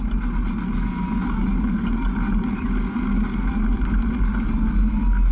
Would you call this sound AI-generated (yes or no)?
no